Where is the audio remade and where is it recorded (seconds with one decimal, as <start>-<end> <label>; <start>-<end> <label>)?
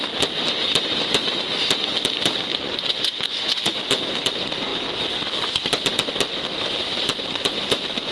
0.0-2.5 recorded; 2.5-3.8 remade; 3.8-8.1 recorded